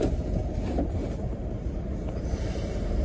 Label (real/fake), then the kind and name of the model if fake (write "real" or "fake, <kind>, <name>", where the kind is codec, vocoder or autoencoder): fake, vocoder, BigVGAN v2